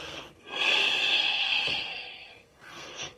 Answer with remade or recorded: remade